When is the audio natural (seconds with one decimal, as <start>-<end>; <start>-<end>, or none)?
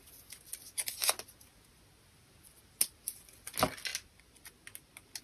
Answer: 0.0-5.2